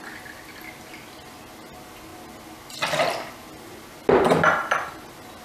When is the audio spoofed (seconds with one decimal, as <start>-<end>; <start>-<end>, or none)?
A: none